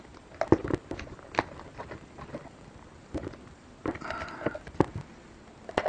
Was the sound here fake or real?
real